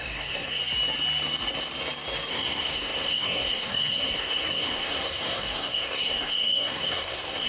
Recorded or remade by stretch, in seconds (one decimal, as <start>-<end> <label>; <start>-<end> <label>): 0.0-0.6 remade; 0.6-2.3 recorded; 2.3-7.5 remade